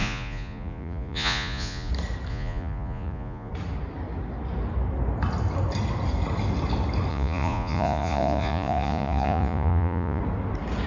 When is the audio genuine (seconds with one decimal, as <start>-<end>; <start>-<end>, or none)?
1.9-2.3; 3.5-7.1; 10.2-10.9